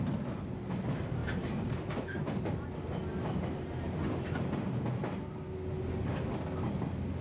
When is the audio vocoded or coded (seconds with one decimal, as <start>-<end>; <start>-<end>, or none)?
1.2-2.2